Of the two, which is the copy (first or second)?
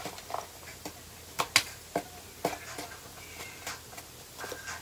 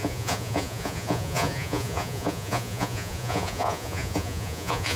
second